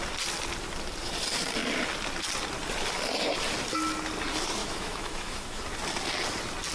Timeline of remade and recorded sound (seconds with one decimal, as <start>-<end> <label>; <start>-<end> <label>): 0.0-4.6 recorded; 4.6-5.6 remade; 5.6-6.7 recorded